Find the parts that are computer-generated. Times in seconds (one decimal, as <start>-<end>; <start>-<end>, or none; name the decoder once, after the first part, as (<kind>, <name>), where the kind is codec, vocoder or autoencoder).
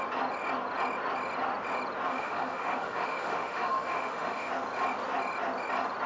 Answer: 2.1-4.5 (autoencoder, DAC-VAE)